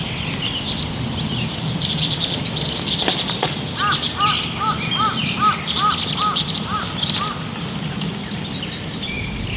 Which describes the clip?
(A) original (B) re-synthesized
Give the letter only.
A